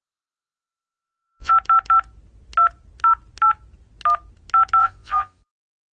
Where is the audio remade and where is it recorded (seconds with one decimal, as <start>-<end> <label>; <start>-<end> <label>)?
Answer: 0.0-1.5 remade; 1.5-4.8 recorded; 4.8-5.5 remade; 5.5-5.9 recorded